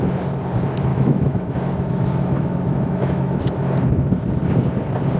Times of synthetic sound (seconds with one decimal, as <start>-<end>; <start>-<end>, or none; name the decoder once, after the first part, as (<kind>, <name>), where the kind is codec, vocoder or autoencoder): 0.9-3.4 (autoencoder, DAC-VAE)